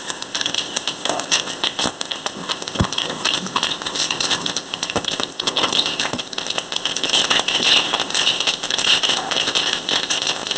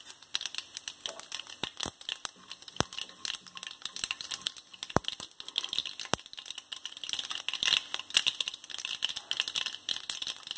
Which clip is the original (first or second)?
second